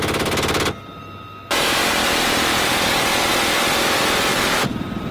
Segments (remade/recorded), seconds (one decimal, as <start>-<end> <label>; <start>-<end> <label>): 0.0-1.8 recorded; 1.8-3.3 remade; 3.3-4.3 recorded; 4.3-5.1 remade